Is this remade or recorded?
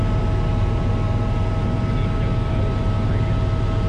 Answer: recorded